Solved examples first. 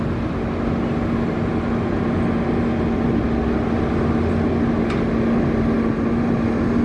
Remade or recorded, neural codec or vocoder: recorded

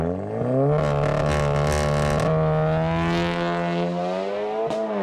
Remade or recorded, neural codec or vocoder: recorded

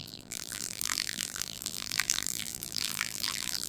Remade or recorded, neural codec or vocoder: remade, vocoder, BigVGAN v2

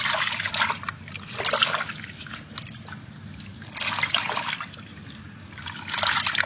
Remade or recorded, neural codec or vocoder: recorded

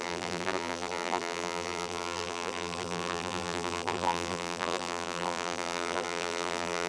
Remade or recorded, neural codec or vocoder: remade, vocoder, BigVGAN v2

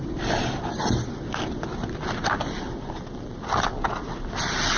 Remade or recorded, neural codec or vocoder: recorded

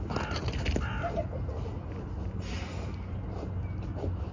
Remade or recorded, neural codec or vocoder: recorded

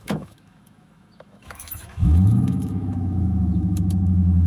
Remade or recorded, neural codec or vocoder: remade, autoencoder, DAC-VAE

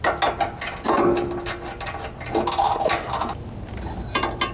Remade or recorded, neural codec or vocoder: recorded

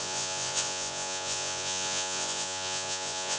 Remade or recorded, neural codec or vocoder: remade, vocoder, Vocos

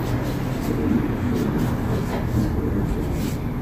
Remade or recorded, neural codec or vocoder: recorded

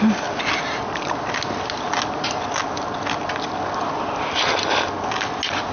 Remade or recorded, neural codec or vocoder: recorded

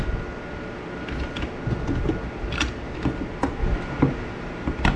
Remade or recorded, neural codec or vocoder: recorded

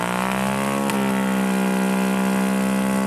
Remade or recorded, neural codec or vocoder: recorded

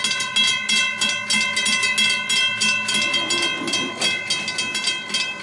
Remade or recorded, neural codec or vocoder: recorded